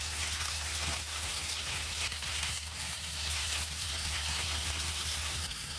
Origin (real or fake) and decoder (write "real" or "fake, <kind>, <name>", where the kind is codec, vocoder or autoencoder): fake, codec, SNAC